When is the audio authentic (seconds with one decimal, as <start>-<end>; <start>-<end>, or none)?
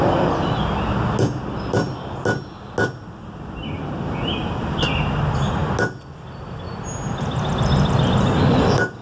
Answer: 0.0-9.0